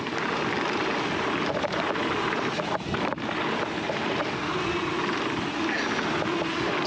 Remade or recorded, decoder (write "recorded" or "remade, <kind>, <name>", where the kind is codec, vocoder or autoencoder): recorded